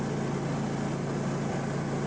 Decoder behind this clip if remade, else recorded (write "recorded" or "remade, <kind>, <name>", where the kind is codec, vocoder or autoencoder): recorded